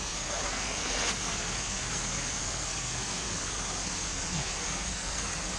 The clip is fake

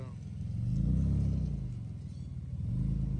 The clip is real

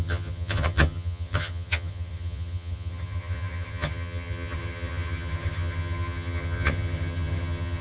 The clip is fake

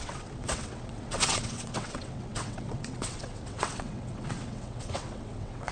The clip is fake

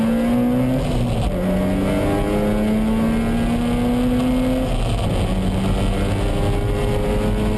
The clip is real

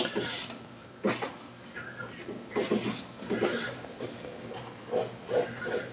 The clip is real